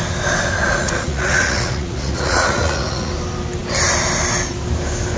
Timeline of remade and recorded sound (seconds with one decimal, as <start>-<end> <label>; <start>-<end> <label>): 0.0-0.6 recorded; 0.6-3.1 remade; 3.1-5.2 recorded